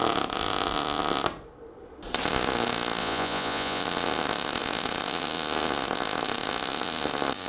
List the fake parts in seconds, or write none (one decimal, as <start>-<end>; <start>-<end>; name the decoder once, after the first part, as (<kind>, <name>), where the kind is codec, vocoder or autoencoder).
3.0-3.8 (vocoder, Vocos)